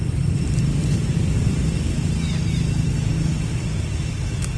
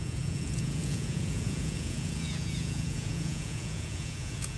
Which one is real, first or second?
first